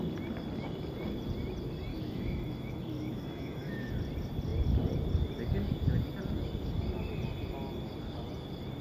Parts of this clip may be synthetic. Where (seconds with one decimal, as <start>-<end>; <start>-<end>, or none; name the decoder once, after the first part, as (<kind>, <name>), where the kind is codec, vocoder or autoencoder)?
1.9-3.9 (autoencoder, DAC-VAE)